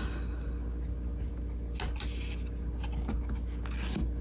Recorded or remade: recorded